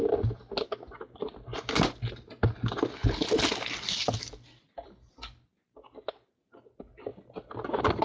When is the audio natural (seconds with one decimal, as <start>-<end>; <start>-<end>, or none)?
0.0-7.1